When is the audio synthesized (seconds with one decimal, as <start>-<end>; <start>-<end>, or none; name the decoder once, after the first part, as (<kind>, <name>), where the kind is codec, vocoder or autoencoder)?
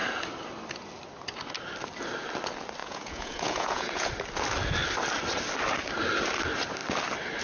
2.8-4.1 (vocoder, Vocos)